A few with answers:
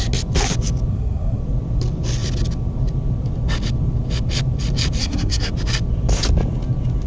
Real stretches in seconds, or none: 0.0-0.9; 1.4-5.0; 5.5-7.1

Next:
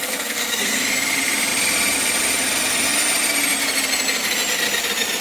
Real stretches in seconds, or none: 0.8-5.2

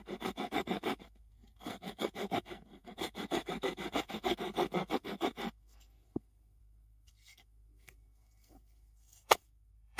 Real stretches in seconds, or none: none

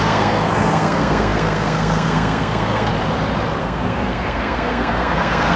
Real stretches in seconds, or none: 2.9-3.6

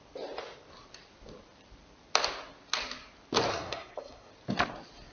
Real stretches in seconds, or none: 0.0-3.5; 4.3-5.1